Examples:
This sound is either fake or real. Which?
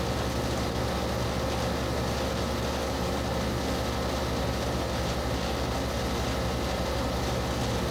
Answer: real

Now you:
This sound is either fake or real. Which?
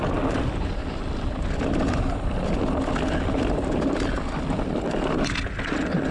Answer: real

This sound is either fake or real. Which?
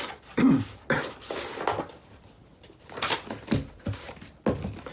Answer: real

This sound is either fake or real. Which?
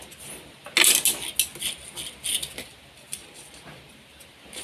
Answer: real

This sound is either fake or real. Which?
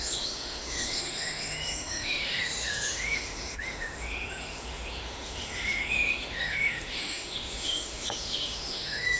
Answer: fake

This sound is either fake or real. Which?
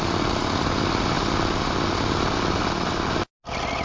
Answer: real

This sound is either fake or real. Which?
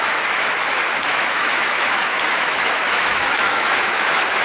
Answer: fake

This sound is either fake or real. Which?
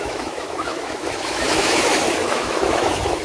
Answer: fake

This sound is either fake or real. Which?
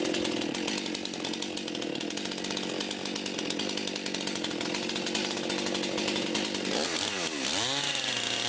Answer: real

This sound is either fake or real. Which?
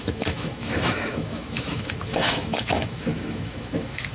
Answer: fake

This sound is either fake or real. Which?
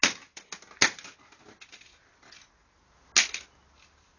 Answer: real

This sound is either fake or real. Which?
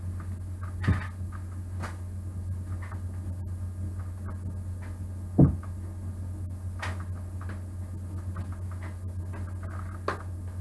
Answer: real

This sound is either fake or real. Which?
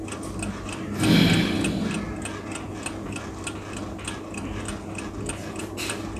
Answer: real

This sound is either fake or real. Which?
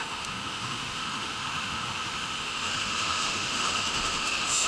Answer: fake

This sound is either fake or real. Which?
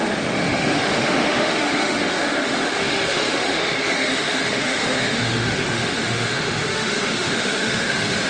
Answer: fake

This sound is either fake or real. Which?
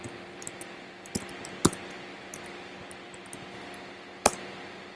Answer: real